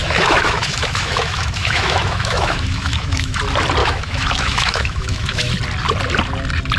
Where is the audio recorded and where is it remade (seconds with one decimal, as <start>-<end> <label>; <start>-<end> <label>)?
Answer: 0.0-3.4 remade; 3.4-3.8 recorded; 3.8-5.5 remade; 5.5-6.8 recorded